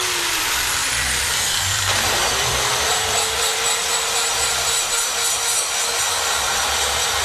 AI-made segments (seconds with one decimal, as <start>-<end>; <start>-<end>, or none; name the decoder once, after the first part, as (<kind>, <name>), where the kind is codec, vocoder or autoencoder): 0.0-3.8 (vocoder, BigVGAN v2); 4.5-5.1; 6.3-7.2